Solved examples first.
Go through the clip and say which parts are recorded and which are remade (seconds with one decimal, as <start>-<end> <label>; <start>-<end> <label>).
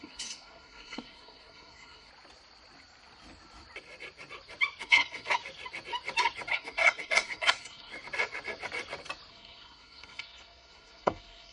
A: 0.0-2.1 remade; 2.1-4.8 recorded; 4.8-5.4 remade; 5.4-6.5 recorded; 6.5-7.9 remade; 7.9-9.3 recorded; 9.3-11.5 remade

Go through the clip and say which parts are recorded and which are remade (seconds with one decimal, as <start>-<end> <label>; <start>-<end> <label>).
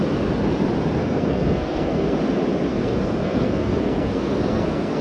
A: 0.0-1.0 recorded; 1.0-2.2 remade; 2.2-2.7 recorded; 2.7-5.0 remade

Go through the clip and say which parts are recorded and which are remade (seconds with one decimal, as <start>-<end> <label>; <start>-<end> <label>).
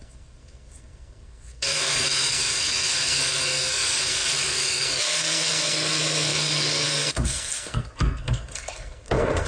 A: 0.0-9.5 remade